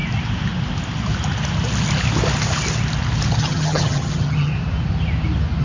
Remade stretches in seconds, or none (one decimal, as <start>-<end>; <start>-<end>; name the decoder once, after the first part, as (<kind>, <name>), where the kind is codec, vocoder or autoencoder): 3.4-4.5 (vocoder, HiFi-GAN)